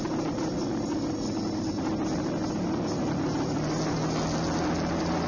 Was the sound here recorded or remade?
recorded